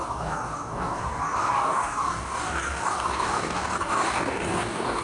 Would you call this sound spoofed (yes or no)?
yes